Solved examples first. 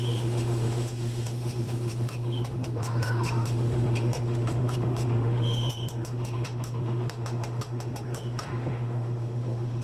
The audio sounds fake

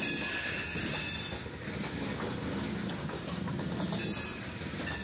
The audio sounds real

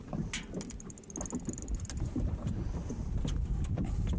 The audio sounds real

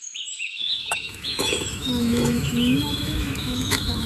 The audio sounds fake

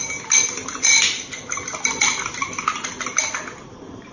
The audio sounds real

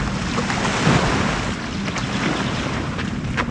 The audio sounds real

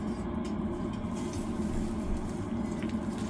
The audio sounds real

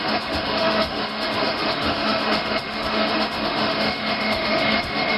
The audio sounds fake